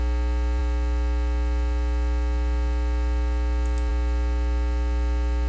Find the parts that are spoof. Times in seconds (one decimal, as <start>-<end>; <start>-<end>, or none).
none